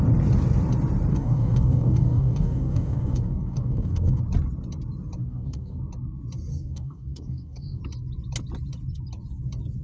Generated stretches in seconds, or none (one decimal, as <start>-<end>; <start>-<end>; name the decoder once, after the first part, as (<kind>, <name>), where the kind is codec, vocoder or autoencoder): 1.1-4.2 (codec, DAC); 5.2-5.8; 6.5-7.8